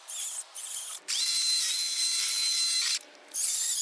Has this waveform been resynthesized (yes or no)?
no